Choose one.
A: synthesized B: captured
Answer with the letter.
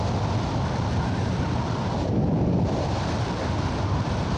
B